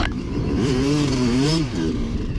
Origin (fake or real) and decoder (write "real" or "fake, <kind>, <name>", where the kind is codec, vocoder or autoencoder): fake, vocoder, BigVGAN v2